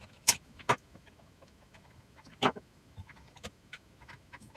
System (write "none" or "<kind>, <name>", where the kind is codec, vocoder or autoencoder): autoencoder, DAC-VAE